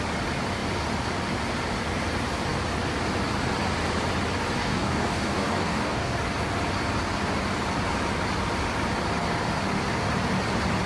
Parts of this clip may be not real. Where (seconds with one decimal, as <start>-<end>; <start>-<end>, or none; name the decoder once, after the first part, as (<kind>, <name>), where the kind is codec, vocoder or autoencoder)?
4.6-6.1 (codec, DAC)